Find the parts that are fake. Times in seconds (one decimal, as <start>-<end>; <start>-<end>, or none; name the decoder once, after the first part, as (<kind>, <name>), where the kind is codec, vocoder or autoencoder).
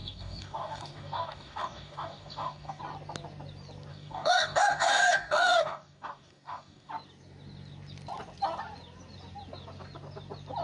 0.0-2.8 (codec, DAC); 3.9-6.9